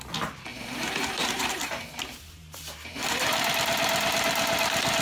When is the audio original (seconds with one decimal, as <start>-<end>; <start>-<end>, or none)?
0.0-0.5; 3.5-5.0